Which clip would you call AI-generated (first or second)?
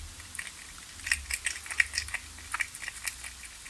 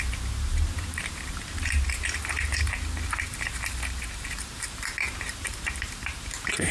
second